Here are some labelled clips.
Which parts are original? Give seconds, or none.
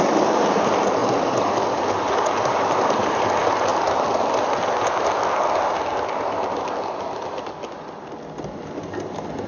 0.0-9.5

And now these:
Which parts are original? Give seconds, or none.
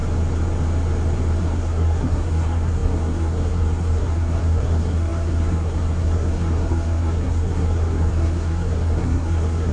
0.0-1.4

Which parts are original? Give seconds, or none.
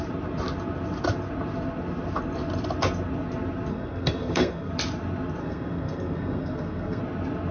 0.0-3.7; 4.7-5.4; 7.0-7.5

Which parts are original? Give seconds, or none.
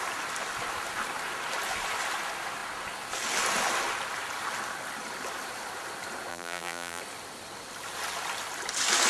0.0-6.3; 7.0-9.1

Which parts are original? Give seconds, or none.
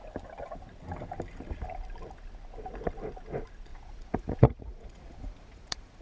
0.0-3.7